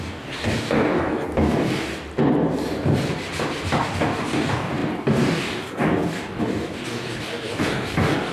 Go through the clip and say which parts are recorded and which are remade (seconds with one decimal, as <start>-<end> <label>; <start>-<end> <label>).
0.0-1.9 remade; 1.9-3.8 recorded; 3.8-8.3 remade